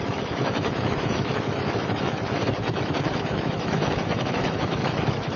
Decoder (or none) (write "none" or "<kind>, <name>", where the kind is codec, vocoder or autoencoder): autoencoder, DAC-VAE